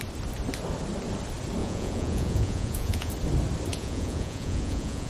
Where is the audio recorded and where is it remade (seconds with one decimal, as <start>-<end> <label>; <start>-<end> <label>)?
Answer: 0.0-1.6 recorded; 1.6-3.1 remade; 3.1-3.7 recorded; 3.7-5.1 remade